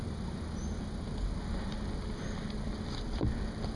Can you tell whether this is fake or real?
real